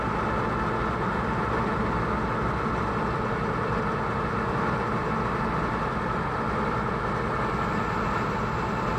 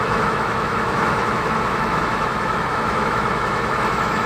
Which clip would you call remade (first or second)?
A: second